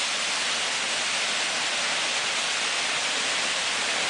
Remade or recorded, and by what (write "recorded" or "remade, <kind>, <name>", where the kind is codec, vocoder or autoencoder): recorded